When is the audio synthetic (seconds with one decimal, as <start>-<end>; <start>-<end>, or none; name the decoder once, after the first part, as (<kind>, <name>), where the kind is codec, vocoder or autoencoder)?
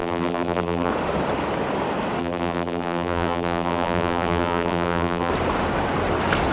0.0-0.9 (vocoder, BigVGAN v2); 2.2-5.3